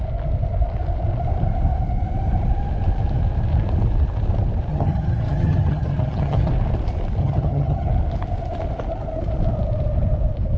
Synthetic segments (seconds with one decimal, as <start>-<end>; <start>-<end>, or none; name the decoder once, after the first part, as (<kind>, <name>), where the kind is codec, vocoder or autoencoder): 4.7-6.5 (vocoder, HiFi-GAN); 7.2-7.9